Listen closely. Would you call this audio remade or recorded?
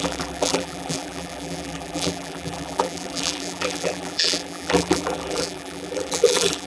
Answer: remade